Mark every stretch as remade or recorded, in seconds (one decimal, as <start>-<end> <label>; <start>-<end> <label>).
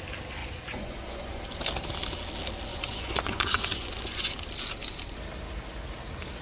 0.0-0.4 recorded; 0.4-1.4 remade; 1.4-2.7 recorded; 2.7-4.3 remade; 4.3-6.4 recorded